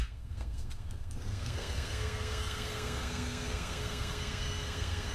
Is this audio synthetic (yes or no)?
yes